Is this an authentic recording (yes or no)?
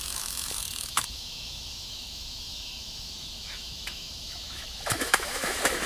no